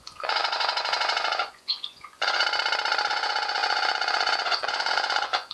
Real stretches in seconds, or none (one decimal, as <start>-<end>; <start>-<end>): 2.4-3.1